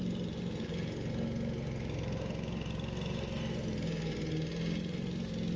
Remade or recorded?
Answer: recorded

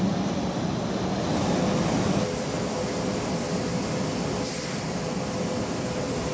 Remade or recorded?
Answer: recorded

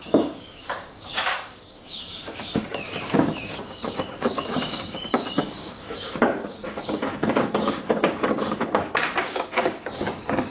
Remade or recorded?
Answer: remade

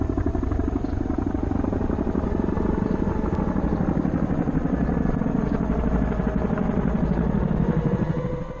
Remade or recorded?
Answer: recorded